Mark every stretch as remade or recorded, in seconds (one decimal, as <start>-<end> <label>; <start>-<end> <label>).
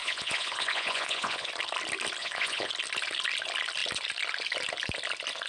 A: 0.0-1.5 remade; 1.5-2.2 recorded; 2.2-2.7 remade; 2.7-5.5 recorded